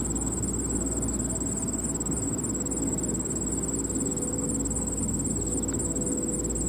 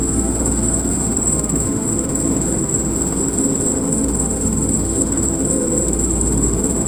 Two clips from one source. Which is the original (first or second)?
first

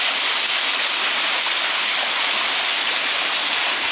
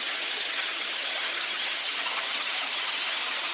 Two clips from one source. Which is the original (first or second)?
first